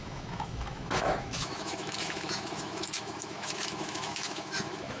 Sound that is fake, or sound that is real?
fake